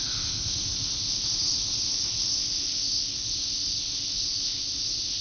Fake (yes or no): yes